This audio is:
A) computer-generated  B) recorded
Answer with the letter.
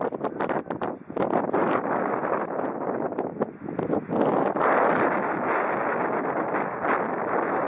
B